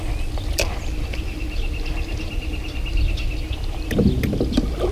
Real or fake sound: real